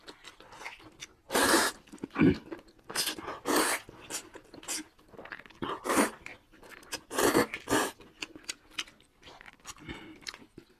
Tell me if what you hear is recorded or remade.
recorded